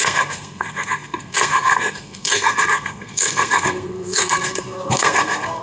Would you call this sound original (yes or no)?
no